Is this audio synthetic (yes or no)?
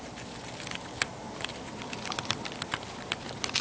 no